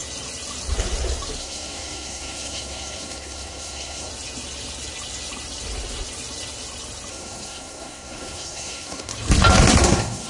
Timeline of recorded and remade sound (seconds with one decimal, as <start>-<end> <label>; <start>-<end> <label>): 0.0-1.4 recorded; 1.4-4.1 remade; 4.1-7.1 recorded; 7.1-9.1 remade; 9.1-9.8 recorded; 9.8-10.3 remade